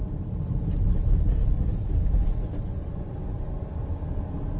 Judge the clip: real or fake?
real